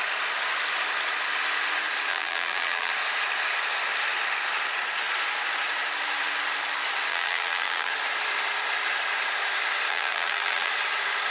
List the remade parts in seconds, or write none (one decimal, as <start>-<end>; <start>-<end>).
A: 2.1-2.9; 7.1-7.9; 9.9-10.7